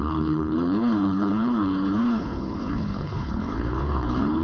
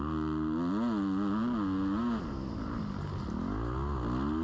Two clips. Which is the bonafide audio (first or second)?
second